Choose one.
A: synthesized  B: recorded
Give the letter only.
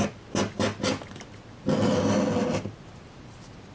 B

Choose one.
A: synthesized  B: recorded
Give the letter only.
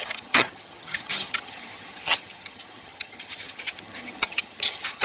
A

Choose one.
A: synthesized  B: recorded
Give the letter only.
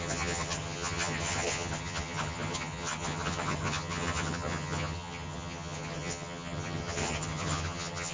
A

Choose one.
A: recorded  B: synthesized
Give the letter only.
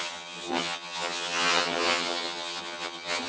B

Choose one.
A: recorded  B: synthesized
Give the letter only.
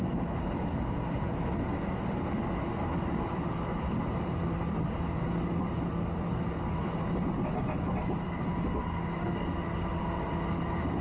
A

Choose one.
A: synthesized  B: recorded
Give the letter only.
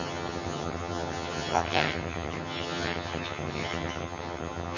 A